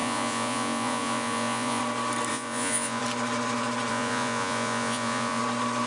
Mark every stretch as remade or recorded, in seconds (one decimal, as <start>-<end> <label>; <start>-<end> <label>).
0.0-1.8 remade; 1.8-2.3 recorded; 2.3-3.0 remade; 3.0-3.9 recorded; 3.9-5.4 remade; 5.4-5.9 recorded